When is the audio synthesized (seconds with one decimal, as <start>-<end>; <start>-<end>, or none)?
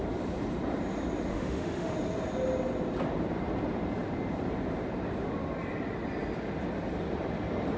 1.3-1.9